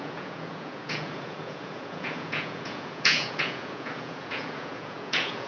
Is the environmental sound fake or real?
fake